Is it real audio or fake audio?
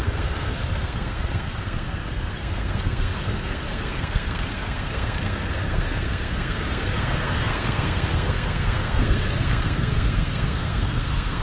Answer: fake